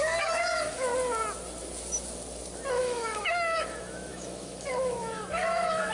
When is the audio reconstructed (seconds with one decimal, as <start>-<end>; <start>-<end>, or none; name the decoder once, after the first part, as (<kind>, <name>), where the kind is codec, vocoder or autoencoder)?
0.0-0.9 (autoencoder, DAC-VAE); 2.7-5.9